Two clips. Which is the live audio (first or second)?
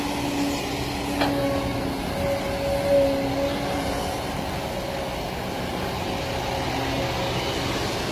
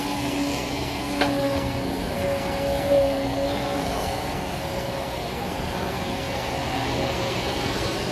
first